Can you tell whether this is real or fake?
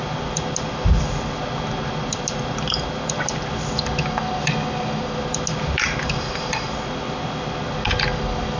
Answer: real